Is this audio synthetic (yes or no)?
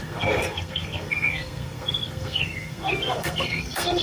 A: yes